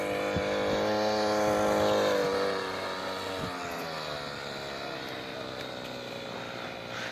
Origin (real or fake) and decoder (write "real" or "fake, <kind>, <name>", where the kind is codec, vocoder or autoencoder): real